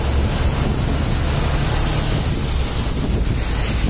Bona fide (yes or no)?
yes